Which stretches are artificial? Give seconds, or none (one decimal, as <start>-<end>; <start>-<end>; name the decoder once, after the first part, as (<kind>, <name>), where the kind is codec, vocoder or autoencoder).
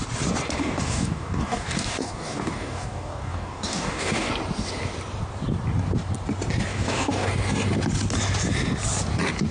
0.6-4.3 (codec, DAC); 6.7-7.3